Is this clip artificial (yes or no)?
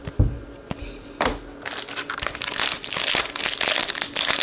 no